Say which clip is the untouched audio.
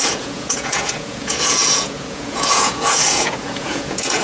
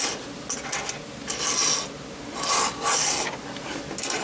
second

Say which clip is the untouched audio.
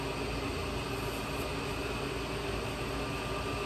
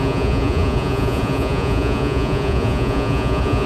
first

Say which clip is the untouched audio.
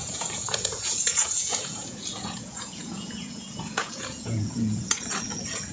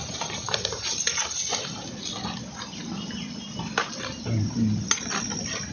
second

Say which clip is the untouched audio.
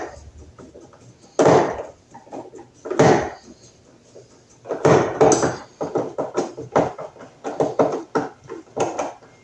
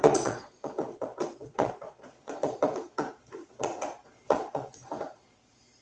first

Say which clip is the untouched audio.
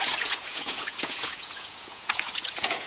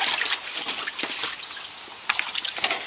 second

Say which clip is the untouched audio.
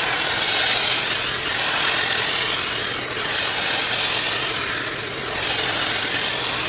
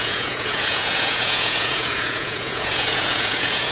first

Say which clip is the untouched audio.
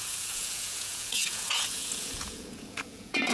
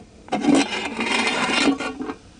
second